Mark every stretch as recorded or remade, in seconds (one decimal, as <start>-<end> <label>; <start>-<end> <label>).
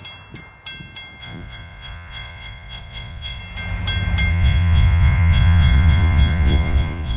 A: 0.0-1.2 recorded; 1.2-3.4 remade; 3.4-4.3 recorded; 4.3-7.2 remade